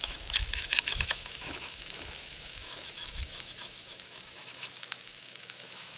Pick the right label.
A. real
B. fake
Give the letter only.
B